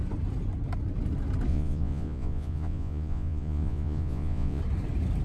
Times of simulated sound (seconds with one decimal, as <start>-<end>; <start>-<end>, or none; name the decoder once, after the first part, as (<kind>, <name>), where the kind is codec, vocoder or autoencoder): 1.5-4.6 (vocoder, Vocos)